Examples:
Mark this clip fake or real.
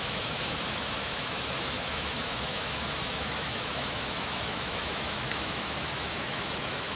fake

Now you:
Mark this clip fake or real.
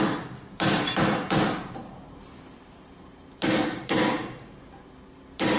fake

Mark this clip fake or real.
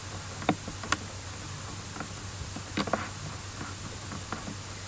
real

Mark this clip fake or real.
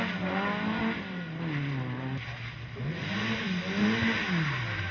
real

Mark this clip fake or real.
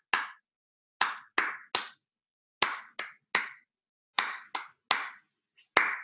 real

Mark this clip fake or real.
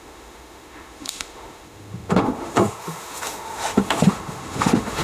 fake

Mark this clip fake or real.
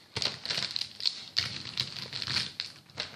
real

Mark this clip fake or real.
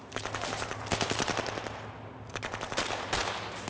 real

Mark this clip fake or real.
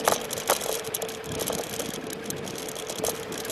fake